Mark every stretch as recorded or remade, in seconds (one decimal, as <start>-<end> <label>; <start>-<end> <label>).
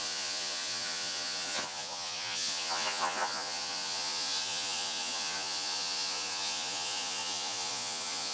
0.0-8.3 remade